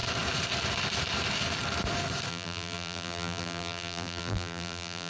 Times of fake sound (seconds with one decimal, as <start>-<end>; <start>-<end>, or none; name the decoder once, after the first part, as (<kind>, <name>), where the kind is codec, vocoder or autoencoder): 2.3-5.1 (vocoder, BigVGAN v2)